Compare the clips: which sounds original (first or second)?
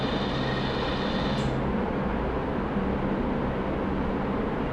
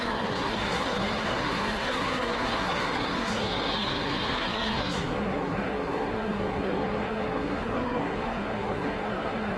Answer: first